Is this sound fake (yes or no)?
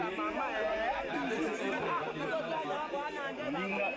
no